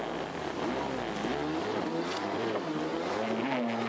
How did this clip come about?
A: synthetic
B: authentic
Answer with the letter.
B